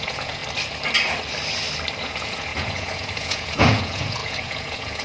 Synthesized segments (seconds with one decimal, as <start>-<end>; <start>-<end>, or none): 0.0-0.4; 2.0-5.0